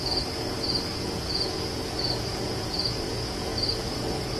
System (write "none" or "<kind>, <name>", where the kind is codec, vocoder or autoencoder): vocoder, Vocos